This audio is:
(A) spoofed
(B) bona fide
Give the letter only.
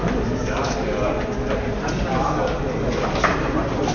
B